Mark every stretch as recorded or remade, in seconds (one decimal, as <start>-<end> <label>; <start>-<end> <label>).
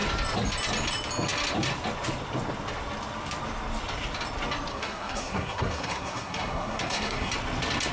0.0-4.7 recorded; 4.7-7.3 remade; 7.3-7.9 recorded